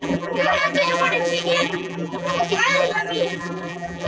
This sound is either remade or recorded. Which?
remade